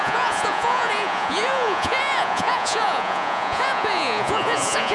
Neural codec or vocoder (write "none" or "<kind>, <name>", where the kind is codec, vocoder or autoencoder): vocoder, Vocos